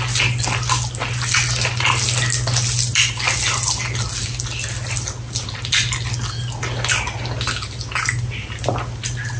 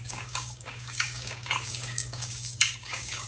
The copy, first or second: second